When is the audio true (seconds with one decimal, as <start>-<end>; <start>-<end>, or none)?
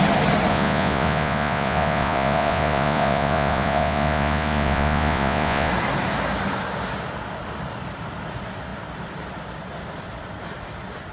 0.0-0.5; 5.7-11.1